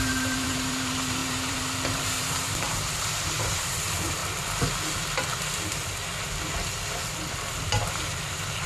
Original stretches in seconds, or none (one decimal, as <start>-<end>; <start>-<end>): 4.2-7.5